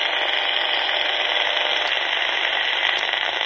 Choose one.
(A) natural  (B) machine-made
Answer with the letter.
A